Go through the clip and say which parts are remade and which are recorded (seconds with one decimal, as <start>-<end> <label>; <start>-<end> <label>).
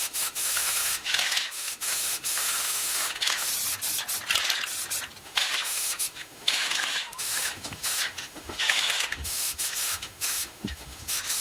0.0-3.5 remade; 3.5-5.2 recorded; 5.2-11.4 remade